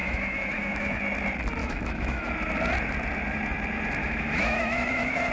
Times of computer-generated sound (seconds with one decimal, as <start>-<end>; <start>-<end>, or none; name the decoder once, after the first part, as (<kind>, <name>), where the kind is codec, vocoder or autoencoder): 0.0-1.0 (autoencoder, DAC-VAE); 1.6-2.3; 4.0-5.3